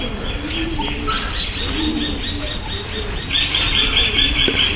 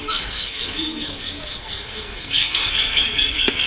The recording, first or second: first